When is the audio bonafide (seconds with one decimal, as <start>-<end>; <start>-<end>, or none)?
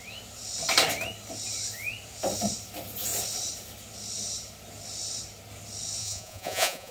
0.0-6.0